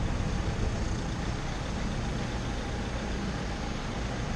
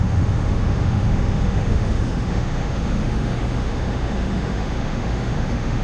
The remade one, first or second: second